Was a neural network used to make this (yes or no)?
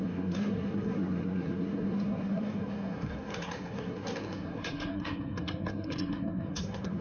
yes